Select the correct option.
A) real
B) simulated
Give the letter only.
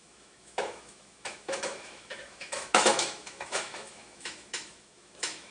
B